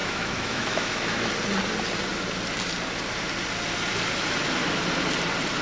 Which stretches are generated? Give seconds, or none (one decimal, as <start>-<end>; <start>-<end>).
0.0-1.3